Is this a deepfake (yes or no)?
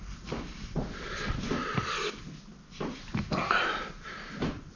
yes